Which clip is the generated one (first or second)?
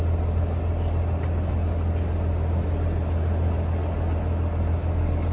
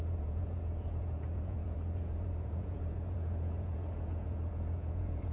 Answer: second